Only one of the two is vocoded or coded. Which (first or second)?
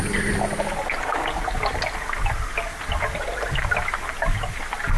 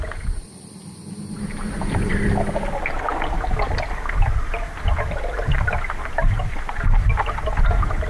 second